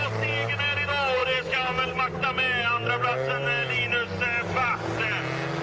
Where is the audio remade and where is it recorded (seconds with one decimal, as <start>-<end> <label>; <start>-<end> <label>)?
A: 0.0-5.6 recorded